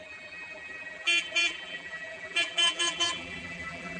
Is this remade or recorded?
remade